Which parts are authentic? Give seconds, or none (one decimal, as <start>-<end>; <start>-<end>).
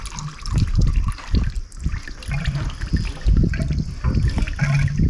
0.0-5.1